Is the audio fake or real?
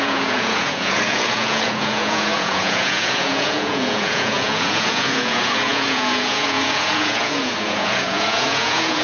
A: fake